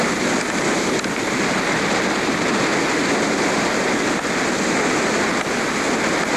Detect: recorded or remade recorded